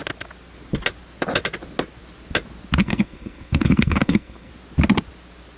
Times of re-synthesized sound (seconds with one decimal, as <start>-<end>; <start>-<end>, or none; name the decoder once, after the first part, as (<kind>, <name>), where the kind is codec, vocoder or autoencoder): 2.8-4.5 (codec, SNAC)